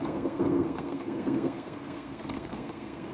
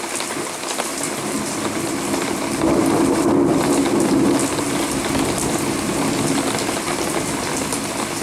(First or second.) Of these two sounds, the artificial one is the first